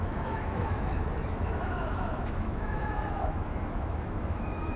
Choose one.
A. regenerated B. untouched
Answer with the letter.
A